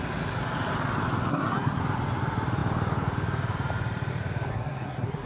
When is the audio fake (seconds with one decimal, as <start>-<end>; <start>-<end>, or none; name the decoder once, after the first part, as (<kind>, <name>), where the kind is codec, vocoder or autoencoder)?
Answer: 1.3-1.8 (codec, SNAC); 4.5-5.3